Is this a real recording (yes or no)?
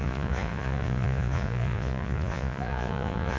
no